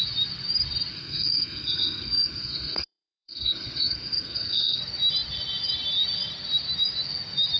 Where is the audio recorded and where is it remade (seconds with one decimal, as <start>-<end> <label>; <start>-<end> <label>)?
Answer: 0.0-0.9 recorded; 0.9-4.8 remade; 4.8-7.6 recorded